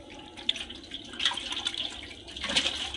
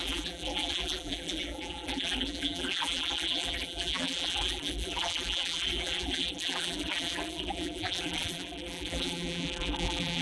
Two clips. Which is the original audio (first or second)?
first